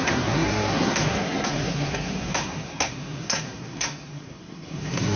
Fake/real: fake